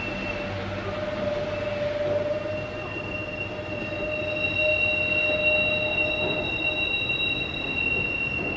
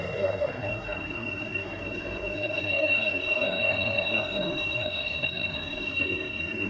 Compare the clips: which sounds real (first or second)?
first